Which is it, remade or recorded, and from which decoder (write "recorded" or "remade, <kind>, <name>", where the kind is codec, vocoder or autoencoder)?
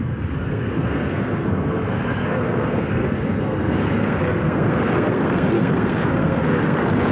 remade, codec, SNAC